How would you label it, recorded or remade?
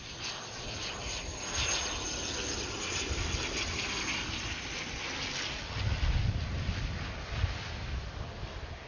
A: recorded